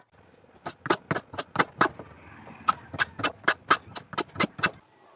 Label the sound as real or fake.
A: real